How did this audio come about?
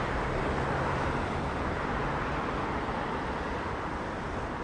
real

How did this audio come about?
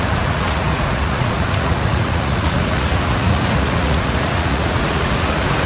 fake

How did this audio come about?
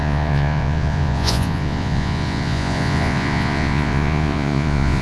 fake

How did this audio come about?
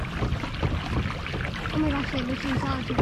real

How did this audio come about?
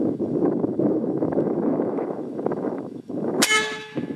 fake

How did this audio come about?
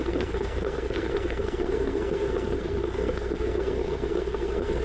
fake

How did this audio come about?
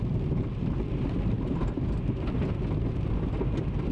real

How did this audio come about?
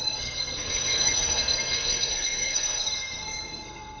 fake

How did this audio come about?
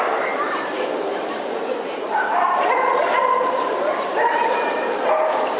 fake